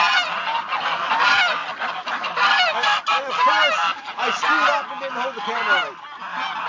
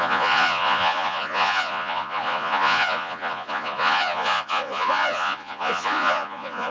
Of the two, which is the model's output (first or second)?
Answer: second